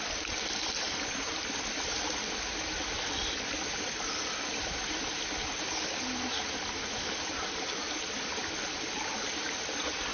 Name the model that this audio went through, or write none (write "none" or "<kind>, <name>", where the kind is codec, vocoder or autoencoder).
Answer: none